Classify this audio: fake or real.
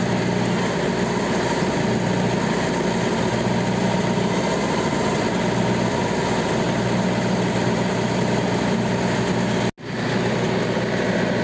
real